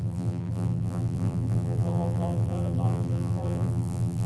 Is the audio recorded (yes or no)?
no